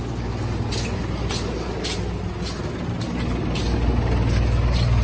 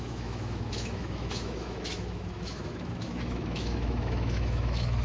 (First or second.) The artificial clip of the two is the second